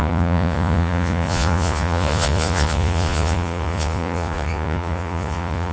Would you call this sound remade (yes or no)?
yes